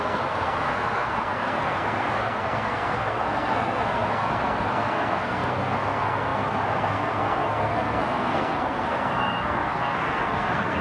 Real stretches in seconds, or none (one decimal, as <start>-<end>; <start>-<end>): none